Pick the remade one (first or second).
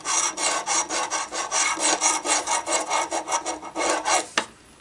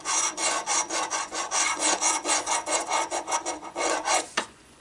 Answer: second